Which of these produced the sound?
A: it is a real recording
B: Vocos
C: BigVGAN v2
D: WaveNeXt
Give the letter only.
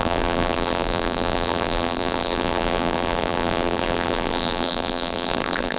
C